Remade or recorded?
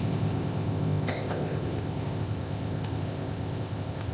remade